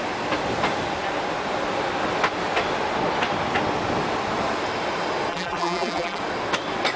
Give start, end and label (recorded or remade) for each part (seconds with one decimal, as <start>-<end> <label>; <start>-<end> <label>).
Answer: 0.0-5.3 recorded; 5.3-6.2 remade; 6.2-7.0 recorded